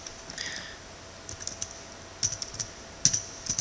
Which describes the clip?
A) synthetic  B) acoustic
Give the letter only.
B